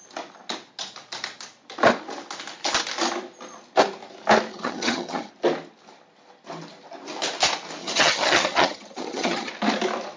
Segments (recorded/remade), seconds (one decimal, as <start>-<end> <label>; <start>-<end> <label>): 0.0-4.5 recorded; 4.5-5.3 remade; 5.3-7.8 recorded; 7.8-9.5 remade; 9.5-10.2 recorded